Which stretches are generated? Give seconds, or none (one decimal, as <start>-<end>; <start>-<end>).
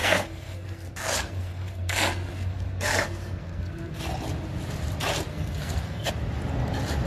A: 0.0-4.0; 5.3-6.1